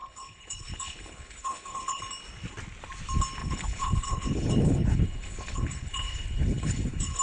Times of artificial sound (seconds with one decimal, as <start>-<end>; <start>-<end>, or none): 0.0-2.0; 3.4-7.2